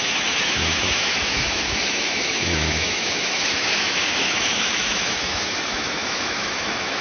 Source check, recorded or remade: remade